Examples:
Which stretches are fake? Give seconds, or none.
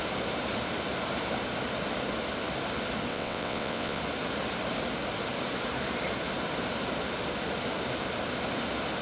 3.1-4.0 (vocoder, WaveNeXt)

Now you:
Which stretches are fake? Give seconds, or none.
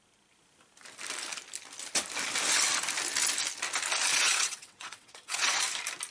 4.1-5.6 (vocoder, WaveNeXt)